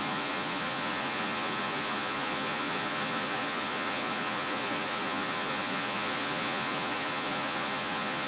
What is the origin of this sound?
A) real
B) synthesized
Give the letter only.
B